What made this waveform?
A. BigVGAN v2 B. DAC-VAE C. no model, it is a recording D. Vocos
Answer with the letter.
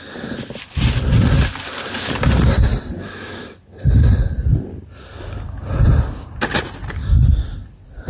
C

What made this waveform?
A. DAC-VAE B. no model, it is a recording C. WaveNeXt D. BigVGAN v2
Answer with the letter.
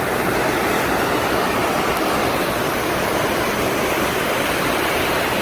B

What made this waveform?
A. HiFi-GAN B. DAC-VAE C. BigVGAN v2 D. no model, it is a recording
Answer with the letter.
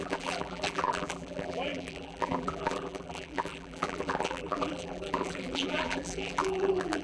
C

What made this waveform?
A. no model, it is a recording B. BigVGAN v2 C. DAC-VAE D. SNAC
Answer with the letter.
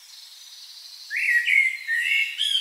A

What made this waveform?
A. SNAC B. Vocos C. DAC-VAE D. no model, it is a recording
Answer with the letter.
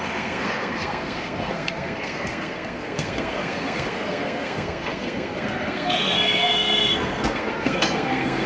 A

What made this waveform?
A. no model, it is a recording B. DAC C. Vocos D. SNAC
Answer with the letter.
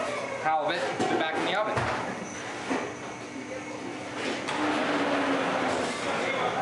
A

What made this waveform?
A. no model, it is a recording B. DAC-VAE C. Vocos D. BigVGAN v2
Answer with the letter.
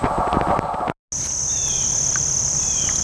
A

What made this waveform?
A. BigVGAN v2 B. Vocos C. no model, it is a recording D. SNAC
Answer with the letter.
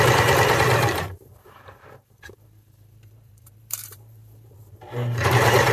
A